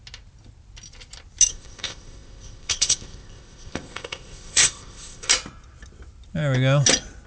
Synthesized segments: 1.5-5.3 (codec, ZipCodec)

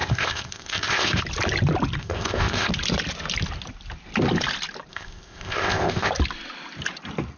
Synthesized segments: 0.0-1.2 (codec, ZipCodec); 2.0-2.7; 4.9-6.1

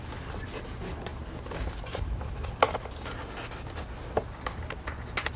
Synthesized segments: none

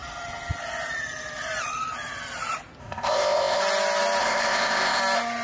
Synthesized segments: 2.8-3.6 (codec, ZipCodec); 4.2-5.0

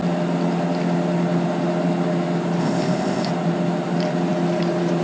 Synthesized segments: 2.6-3.3 (codec, ZipCodec)

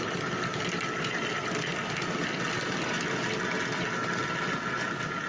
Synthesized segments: none

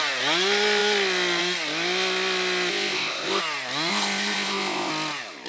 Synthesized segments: 2.7-3.4 (codec, ZipCodec); 3.9-4.9

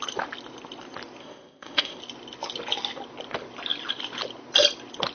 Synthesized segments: 1.2-2.0 (codec, ZipCodec)